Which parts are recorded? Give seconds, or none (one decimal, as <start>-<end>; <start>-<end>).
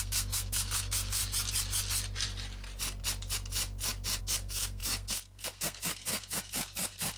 1.2-4.2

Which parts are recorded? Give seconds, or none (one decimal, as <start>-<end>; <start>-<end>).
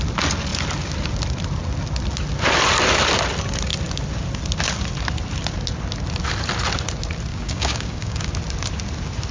0.0-7.3; 8.3-9.3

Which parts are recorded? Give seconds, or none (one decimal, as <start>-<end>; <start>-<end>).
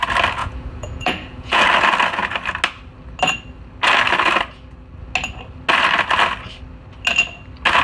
0.0-0.4; 1.6-7.8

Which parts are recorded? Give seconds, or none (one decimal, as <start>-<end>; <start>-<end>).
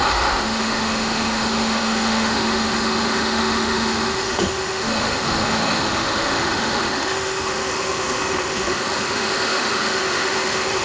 none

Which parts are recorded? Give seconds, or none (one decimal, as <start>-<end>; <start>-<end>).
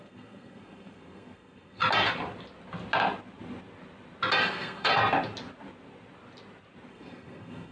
1.8-4.4; 4.9-6.9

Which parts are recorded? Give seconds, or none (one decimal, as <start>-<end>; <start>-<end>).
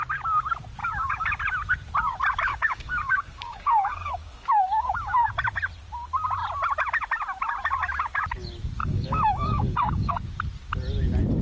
0.0-0.8; 1.4-2.5; 5.3-8.8; 10.1-11.4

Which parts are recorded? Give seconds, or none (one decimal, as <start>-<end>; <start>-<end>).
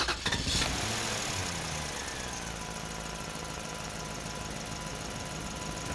0.0-5.9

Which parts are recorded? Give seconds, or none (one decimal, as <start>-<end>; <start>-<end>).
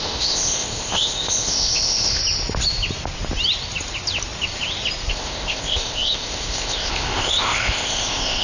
2.2-5.1